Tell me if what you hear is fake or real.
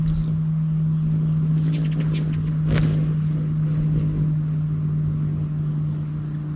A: real